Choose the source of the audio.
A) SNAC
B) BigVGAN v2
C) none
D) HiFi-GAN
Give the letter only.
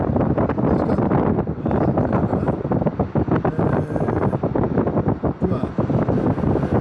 C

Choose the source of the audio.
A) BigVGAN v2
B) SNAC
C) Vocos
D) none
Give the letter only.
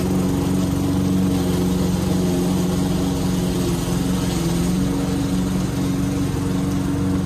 D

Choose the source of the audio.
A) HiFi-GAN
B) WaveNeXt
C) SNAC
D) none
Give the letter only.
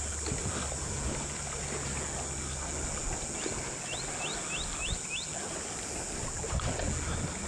D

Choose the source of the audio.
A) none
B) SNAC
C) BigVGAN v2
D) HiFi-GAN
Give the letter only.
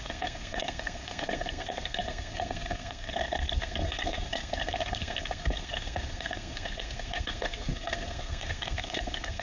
B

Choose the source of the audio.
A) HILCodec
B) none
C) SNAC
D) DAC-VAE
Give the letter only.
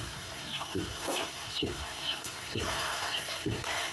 C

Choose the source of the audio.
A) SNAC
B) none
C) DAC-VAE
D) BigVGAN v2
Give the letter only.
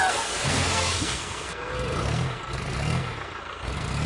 A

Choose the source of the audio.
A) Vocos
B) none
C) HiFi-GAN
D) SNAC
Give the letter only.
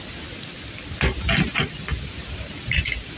B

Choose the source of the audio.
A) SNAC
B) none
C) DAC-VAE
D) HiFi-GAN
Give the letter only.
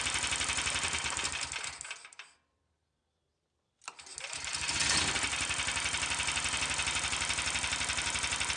B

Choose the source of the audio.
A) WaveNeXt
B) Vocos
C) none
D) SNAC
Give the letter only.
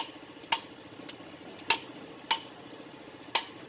C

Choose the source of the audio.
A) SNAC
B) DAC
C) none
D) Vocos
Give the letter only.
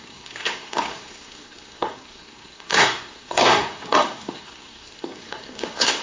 A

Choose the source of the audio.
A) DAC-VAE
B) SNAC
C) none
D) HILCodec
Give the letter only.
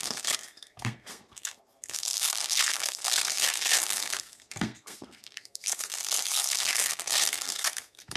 B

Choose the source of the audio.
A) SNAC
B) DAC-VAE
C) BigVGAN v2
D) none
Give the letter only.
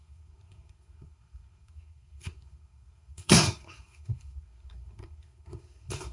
A